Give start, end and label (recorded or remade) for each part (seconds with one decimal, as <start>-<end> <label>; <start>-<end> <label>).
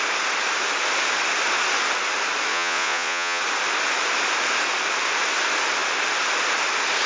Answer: 0.0-2.5 recorded; 2.5-3.4 remade; 3.4-7.1 recorded